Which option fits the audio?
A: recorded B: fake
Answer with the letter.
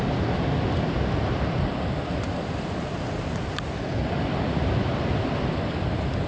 A